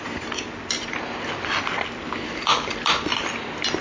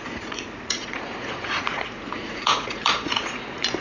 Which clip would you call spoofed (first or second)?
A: second